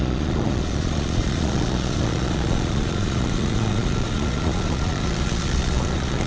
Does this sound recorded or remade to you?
remade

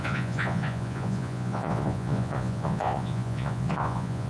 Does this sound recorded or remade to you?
remade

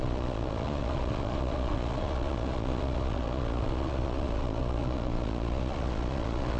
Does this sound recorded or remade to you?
remade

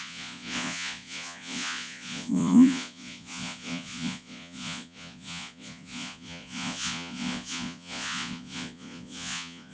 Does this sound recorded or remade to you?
remade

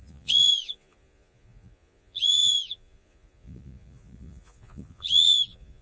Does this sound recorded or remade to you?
remade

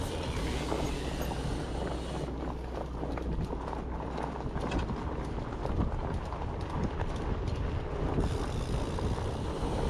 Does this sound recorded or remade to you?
recorded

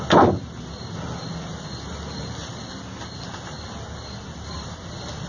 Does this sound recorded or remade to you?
recorded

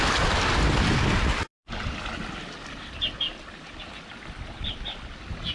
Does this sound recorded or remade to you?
recorded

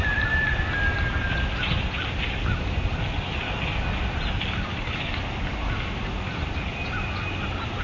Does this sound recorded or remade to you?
recorded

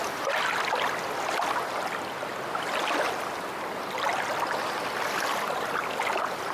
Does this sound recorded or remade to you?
recorded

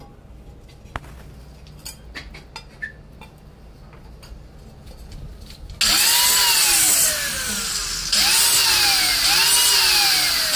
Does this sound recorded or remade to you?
recorded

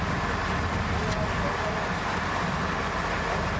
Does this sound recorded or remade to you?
recorded